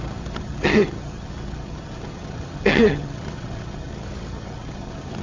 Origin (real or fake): fake